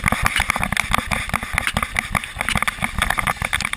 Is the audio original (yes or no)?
yes